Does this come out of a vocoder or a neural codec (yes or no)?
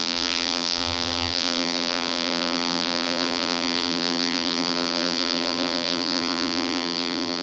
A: yes